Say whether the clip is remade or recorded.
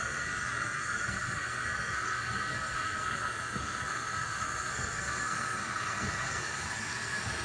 remade